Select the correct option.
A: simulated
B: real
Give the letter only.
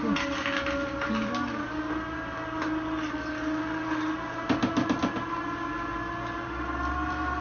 B